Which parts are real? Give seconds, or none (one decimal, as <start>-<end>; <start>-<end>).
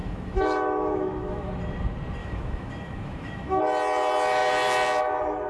1.6-2.2; 3.6-5.5